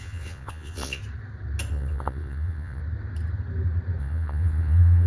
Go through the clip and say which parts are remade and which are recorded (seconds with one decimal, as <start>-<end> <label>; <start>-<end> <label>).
0.0-1.0 remade; 1.0-1.7 recorded; 1.7-2.8 remade; 2.8-4.0 recorded; 4.0-5.1 remade